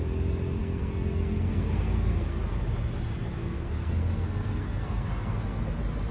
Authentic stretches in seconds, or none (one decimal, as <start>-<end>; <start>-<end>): 0.0-0.6; 2.4-3.4; 5.6-6.1